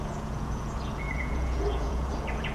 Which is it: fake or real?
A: fake